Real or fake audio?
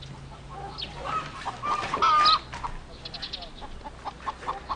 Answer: real